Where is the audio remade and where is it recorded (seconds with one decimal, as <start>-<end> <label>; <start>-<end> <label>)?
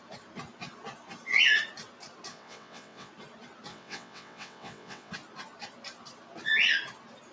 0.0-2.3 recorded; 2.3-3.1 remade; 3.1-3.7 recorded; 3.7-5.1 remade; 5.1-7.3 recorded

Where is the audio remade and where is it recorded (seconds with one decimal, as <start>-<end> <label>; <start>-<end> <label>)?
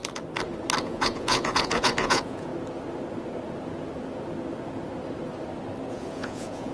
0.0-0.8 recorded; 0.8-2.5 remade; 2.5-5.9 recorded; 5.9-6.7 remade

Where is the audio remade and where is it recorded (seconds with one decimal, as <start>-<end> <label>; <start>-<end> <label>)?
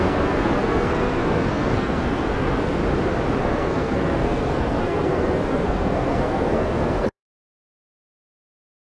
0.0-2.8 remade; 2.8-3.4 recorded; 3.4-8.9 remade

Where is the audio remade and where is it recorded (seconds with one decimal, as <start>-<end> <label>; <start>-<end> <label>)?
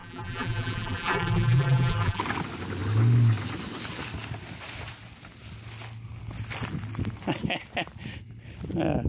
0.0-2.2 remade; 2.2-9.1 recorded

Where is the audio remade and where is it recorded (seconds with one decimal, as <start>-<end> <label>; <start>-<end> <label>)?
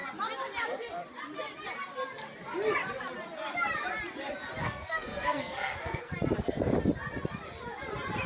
0.0-4.6 recorded; 4.6-6.1 remade; 6.1-8.3 recorded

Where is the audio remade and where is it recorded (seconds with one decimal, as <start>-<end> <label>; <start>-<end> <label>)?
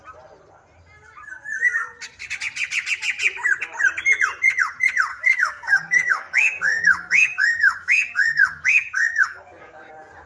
0.0-5.1 recorded; 5.1-9.9 remade; 9.9-10.3 recorded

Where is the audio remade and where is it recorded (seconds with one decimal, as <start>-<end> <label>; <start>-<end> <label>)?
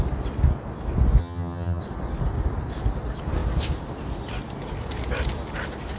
0.0-1.2 recorded; 1.2-1.8 remade; 1.8-6.0 recorded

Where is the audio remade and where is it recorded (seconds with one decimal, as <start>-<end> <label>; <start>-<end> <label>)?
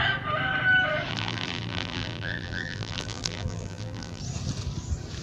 0.0-1.1 recorded; 1.1-4.2 remade; 4.2-5.2 recorded